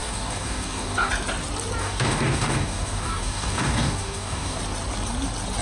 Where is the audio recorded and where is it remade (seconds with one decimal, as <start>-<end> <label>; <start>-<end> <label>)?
0.0-1.1 remade; 1.1-1.8 recorded; 1.8-4.6 remade; 4.6-5.6 recorded